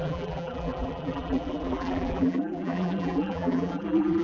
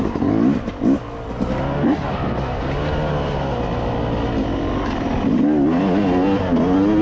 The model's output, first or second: first